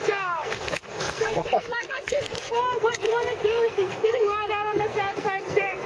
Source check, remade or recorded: remade